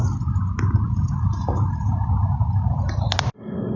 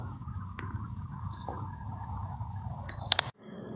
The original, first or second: first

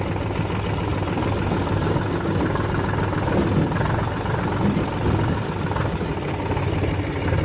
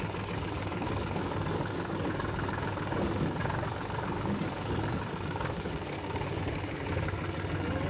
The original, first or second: first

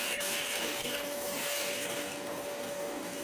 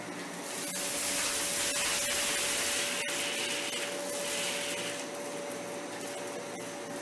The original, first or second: second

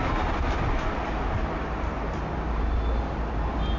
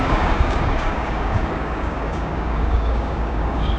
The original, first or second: first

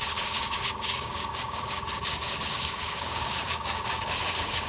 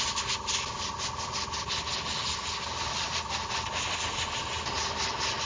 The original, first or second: second